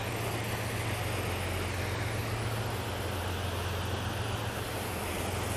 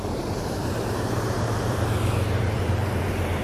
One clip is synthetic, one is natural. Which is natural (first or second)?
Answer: first